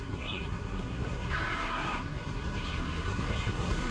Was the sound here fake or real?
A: fake